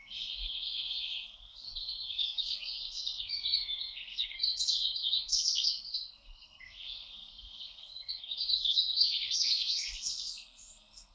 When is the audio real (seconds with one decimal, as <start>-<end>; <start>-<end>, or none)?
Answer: none